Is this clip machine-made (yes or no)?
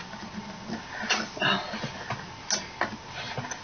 no